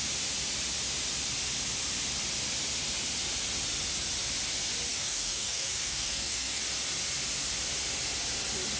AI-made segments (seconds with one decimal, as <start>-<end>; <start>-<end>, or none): 4.9-6.6